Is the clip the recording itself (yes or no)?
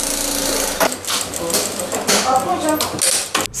yes